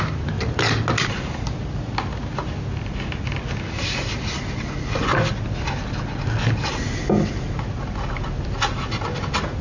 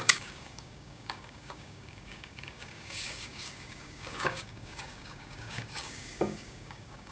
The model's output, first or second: second